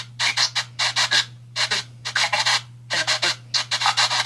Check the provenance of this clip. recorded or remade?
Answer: recorded